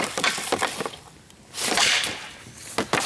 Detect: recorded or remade recorded